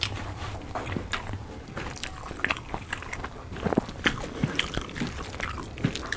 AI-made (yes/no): no